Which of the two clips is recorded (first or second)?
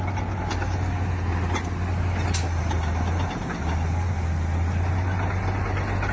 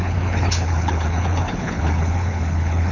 first